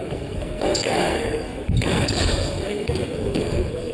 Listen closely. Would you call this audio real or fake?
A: fake